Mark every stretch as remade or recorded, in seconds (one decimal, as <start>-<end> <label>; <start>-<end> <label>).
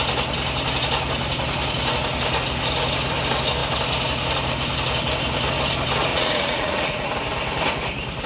0.0-6.1 recorded; 6.1-7.1 remade; 7.1-8.3 recorded